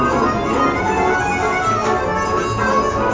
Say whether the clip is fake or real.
real